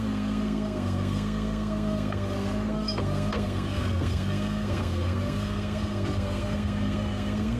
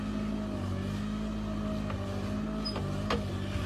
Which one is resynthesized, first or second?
first